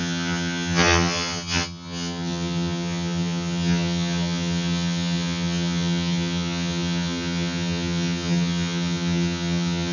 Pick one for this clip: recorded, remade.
remade